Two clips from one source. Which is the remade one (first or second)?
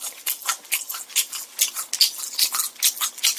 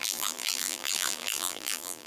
second